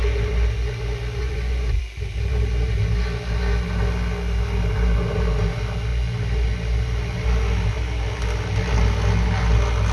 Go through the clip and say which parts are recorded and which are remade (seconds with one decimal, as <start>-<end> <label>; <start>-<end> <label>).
0.0-1.2 recorded; 1.2-1.8 remade; 1.8-9.9 recorded